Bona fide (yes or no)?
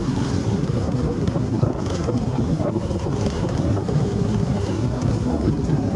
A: no